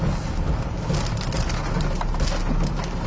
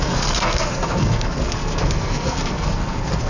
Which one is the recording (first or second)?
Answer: first